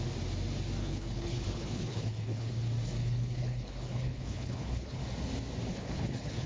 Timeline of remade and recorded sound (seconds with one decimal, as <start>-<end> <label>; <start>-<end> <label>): 0.0-0.8 recorded; 0.8-2.5 remade; 2.5-3.0 recorded; 3.0-5.0 remade; 5.0-5.7 recorded; 5.7-6.5 remade